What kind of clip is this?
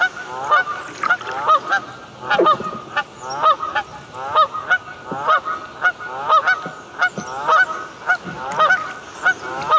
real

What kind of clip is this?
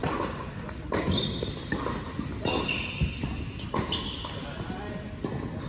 real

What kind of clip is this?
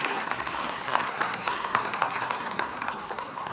fake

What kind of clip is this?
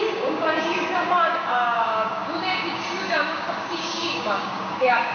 fake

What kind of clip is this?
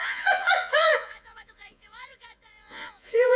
fake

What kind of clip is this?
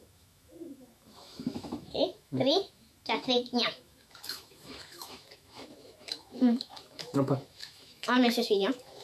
fake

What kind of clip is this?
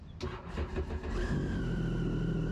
real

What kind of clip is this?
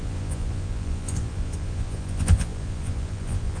fake